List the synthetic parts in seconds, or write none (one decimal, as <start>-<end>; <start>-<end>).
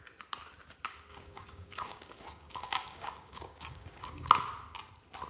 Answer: 1.1-4.3